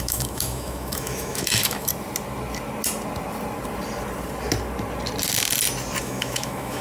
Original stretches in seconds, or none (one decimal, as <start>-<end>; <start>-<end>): 1.9-6.0